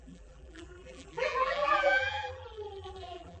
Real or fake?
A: fake